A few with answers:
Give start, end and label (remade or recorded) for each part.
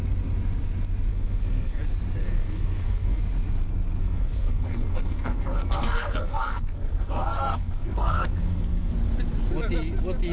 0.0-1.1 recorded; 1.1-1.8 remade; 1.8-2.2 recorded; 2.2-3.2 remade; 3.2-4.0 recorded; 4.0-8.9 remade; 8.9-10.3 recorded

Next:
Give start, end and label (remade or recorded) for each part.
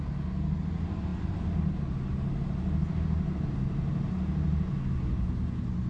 0.0-5.9 recorded